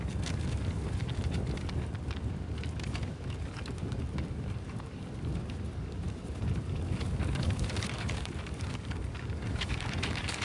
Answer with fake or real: fake